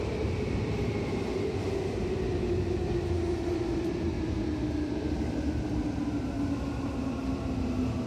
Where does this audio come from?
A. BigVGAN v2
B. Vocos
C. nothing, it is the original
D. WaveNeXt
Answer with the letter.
C